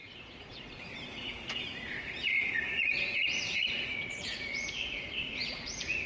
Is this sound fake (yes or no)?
yes